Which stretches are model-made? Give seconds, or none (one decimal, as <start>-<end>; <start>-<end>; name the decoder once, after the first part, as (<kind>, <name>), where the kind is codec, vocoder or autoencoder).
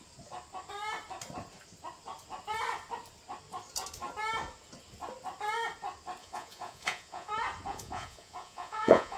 6.2-7.3 (vocoder, Vocos); 7.7-9.2